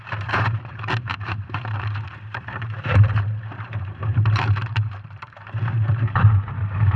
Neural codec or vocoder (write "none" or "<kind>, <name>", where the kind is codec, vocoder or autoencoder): vocoder, BigVGAN v2